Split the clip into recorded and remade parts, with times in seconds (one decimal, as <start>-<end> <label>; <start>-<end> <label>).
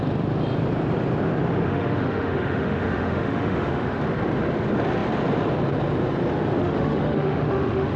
0.0-1.7 recorded; 1.7-4.0 remade; 4.0-6.6 recorded; 6.6-8.0 remade